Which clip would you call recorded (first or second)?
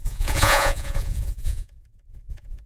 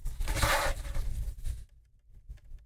second